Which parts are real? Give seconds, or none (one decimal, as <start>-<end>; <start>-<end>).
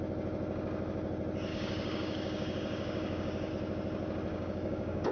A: 0.0-1.5; 3.5-4.3